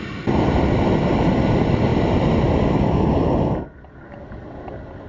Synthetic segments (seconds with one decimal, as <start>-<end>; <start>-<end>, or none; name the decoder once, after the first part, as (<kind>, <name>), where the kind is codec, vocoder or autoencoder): none